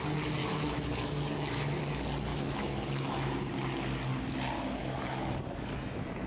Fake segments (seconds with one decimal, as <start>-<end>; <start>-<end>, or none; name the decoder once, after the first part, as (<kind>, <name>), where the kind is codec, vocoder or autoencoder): 0.4-1.8 (autoencoder, DAC-VAE); 2.3-3.4; 4.8-6.3